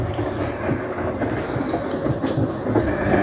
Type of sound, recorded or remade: recorded